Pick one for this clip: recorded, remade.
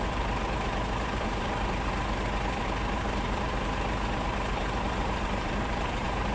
remade